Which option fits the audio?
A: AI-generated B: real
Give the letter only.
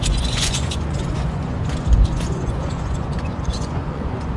A